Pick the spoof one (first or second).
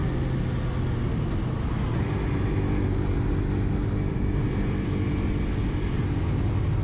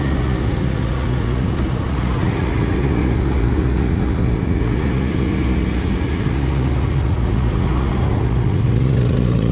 second